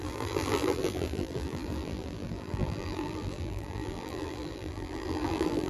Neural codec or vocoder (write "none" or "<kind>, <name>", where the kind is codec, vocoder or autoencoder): vocoder, BigVGAN v2